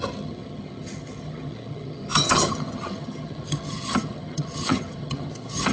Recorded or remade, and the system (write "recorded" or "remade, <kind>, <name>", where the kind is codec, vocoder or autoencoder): remade, vocoder, HiFi-GAN